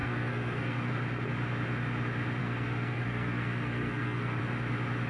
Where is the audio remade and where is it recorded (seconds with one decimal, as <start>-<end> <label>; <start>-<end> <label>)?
0.0-0.9 remade; 0.9-2.4 recorded; 2.4-4.4 remade; 4.4-5.1 recorded